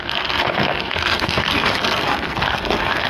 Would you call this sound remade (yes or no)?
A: yes